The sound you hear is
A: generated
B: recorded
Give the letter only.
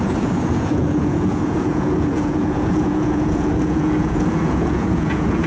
A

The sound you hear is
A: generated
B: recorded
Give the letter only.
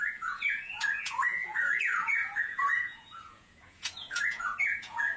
A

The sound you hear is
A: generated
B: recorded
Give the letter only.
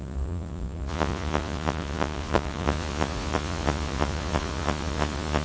A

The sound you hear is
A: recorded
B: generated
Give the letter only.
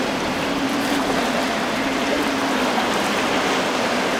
A